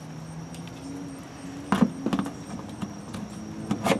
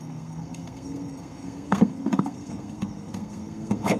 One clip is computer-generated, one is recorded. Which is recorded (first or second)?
first